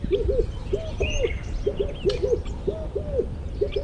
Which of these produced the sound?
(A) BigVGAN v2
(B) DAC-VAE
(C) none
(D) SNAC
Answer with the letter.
C